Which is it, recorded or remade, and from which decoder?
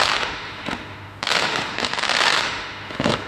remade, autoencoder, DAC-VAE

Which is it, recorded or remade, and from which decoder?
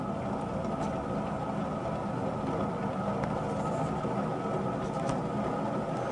recorded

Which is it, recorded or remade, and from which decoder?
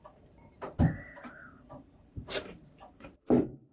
remade, vocoder, BigVGAN v2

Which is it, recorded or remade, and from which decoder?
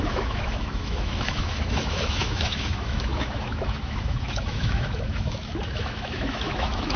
remade, autoencoder, DAC-VAE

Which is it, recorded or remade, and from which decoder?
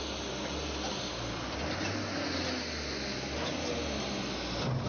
recorded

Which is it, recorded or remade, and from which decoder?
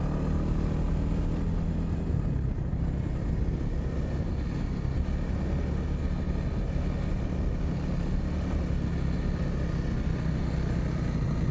recorded